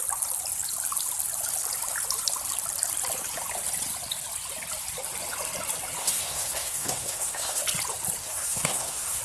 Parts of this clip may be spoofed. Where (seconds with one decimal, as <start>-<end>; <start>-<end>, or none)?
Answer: 6.0-7.6; 8.2-9.2